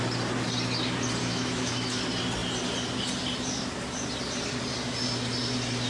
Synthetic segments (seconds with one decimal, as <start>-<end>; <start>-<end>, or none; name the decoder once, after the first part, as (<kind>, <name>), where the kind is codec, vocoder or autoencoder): 1.2-2.0 (autoencoder, DAC-VAE)